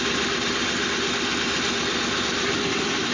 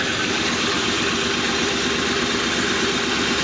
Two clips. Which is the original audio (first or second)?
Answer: first